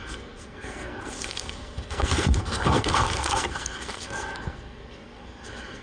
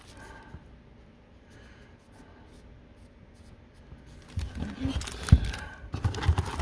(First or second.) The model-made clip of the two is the first